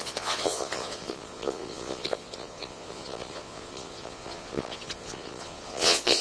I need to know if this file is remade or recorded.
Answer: remade